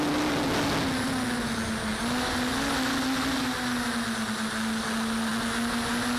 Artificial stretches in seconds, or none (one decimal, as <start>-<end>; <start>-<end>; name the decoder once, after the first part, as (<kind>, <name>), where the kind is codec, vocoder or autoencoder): none